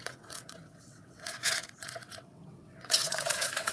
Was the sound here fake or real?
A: fake